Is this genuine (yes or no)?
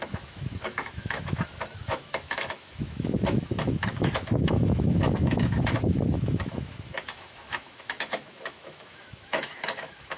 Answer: no